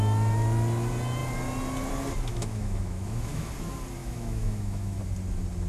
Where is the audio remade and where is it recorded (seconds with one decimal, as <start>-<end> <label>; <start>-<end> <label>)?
0.0-2.3 recorded; 2.3-3.5 remade; 3.5-4.0 recorded; 4.0-5.0 remade; 5.0-5.7 recorded

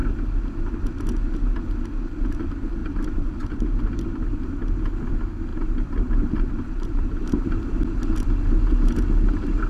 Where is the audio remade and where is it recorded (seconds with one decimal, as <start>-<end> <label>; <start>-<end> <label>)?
0.0-2.8 recorded; 2.8-3.6 remade; 3.6-5.5 recorded; 5.5-7.1 remade; 7.1-9.7 recorded

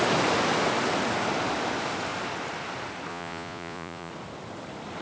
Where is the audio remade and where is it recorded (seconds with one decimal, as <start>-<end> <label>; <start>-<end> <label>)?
0.0-3.1 recorded; 3.1-4.1 remade; 4.1-5.0 recorded

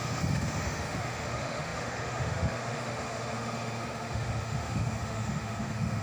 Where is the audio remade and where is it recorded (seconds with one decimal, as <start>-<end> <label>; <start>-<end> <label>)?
0.0-6.0 remade

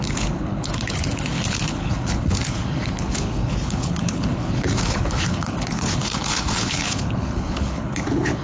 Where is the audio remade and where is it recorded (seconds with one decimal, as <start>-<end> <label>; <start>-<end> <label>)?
0.0-8.4 remade

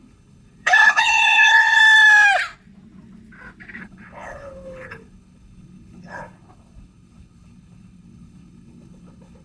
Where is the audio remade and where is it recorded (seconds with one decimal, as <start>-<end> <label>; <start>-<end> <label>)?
0.0-1.8 remade; 1.8-3.8 recorded; 3.8-9.4 remade

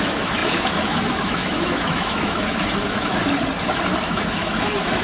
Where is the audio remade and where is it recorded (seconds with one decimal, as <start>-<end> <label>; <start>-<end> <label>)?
0.0-3.2 remade; 3.2-4.0 recorded; 4.0-5.0 remade

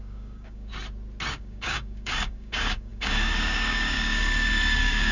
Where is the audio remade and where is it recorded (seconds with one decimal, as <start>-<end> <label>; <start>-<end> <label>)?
0.0-0.7 remade; 0.7-1.3 recorded; 1.3-5.1 remade